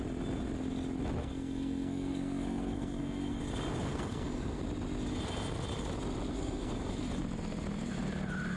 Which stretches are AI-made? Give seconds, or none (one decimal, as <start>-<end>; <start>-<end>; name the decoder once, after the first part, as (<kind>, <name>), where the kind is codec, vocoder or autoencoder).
1.2-3.4 (codec, SNAC); 3.9-4.6; 6.3-7.0